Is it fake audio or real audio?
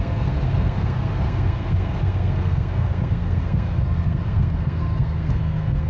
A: fake